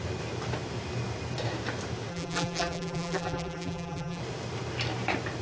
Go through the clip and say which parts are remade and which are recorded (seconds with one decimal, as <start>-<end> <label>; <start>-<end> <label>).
0.0-2.1 recorded; 2.1-4.2 remade; 4.2-5.4 recorded